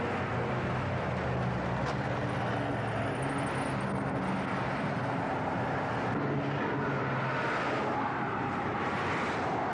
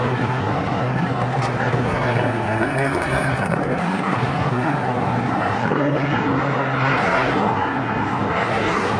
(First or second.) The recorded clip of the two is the first